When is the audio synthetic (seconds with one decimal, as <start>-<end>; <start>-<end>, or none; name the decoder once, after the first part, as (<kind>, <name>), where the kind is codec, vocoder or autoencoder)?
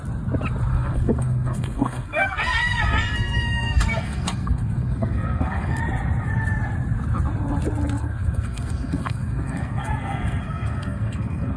0.7-5.8 (codec, SNAC); 8.0-11.6